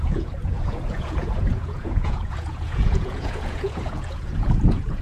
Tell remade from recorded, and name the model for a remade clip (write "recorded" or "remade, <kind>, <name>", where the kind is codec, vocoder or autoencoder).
remade, vocoder, Vocos